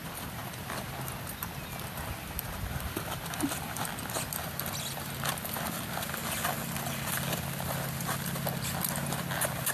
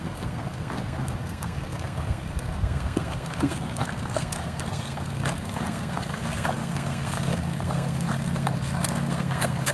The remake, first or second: second